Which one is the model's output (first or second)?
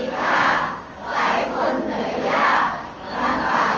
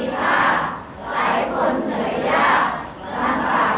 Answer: first